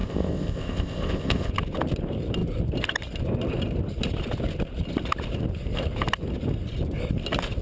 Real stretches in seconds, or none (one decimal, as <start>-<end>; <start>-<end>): 1.5-7.6